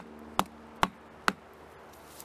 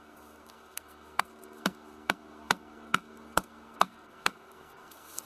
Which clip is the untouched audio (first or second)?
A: first